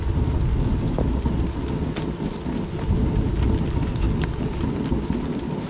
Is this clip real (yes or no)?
yes